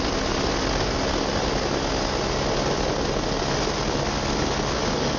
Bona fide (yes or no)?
yes